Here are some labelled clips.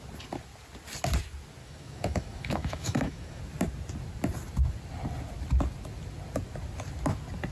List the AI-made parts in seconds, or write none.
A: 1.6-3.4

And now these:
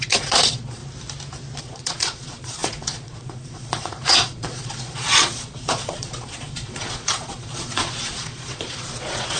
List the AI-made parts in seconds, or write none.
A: 0.0-0.8; 1.6-9.4

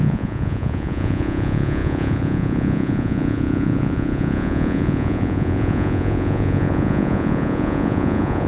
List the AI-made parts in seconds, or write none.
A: 0.0-8.5

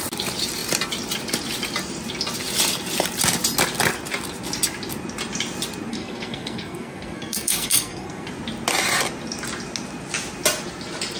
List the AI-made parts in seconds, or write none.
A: 5.9-8.3

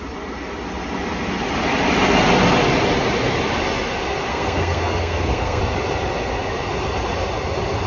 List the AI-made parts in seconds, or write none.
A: 4.3-5.6